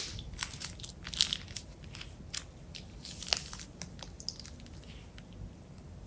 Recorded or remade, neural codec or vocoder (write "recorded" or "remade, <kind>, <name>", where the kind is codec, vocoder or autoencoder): recorded